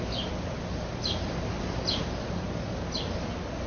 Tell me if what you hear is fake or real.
real